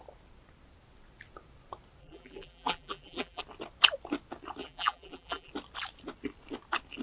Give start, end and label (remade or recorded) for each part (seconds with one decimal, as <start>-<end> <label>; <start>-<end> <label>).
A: 0.0-2.0 recorded; 2.0-3.4 remade; 3.4-4.6 recorded; 4.6-5.5 remade; 5.5-7.0 recorded